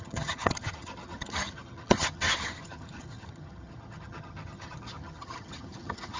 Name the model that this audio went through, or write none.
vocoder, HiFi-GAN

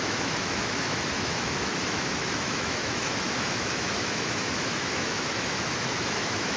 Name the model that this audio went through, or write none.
autoencoder, DAC-VAE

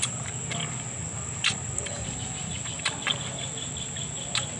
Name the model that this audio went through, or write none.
none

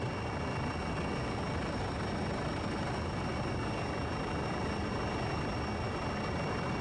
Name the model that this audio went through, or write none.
none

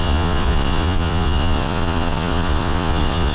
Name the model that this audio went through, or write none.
vocoder, Vocos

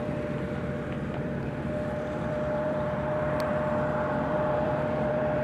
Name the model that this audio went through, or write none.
vocoder, BigVGAN v2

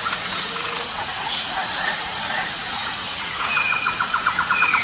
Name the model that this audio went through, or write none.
vocoder, Vocos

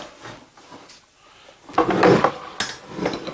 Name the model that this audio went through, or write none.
none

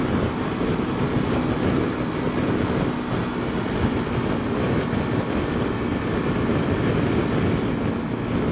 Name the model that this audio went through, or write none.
none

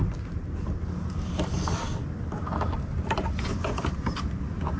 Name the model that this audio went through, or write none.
none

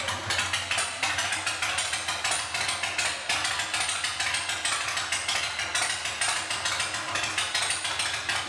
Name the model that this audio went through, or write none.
none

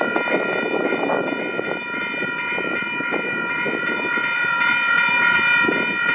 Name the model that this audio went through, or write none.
vocoder, BigVGAN v2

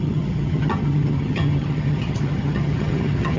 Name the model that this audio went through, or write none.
vocoder, HiFi-GAN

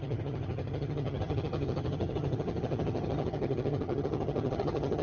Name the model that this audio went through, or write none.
vocoder, HiFi-GAN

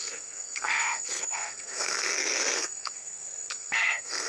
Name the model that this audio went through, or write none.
codec, SNAC